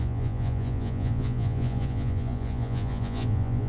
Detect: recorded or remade remade